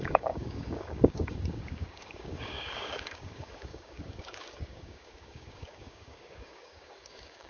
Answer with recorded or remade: remade